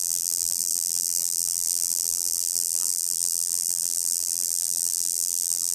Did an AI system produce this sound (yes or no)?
yes